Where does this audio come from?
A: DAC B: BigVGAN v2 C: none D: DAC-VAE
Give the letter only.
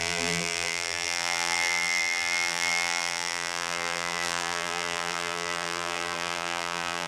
B